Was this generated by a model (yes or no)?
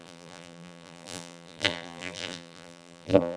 yes